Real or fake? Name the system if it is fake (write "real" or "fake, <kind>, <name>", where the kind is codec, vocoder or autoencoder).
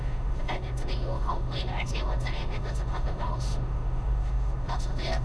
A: fake, autoencoder, DAC-VAE